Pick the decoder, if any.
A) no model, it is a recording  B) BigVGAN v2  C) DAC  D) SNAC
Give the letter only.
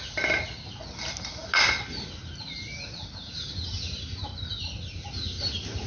A